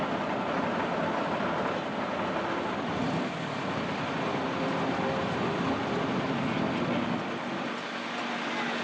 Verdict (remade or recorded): recorded